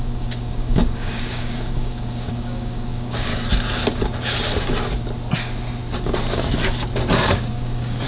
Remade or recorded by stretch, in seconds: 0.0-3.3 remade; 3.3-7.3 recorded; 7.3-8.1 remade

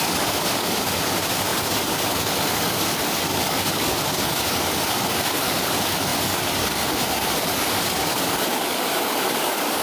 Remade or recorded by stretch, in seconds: 0.0-9.8 remade

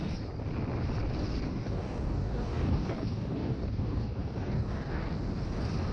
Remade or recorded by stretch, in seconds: 0.0-1.5 recorded; 1.5-5.0 remade; 5.0-5.9 recorded